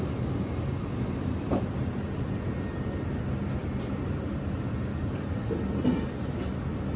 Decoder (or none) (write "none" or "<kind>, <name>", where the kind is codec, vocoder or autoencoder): none